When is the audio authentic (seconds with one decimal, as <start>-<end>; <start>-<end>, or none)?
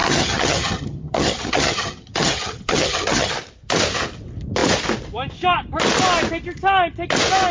3.3-7.5